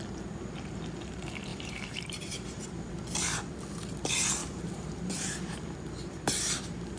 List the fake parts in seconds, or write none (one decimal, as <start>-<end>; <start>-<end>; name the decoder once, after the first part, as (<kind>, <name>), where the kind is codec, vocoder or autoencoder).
1.5-2.9 (vocoder, BigVGAN v2); 4.4-5.1